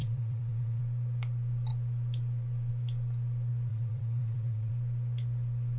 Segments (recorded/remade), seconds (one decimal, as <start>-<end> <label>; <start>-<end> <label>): 0.0-0.8 remade; 0.8-3.7 recorded; 3.7-4.7 remade; 4.7-5.8 recorded